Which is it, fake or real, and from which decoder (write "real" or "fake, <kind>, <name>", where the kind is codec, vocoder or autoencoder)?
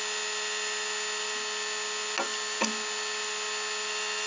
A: real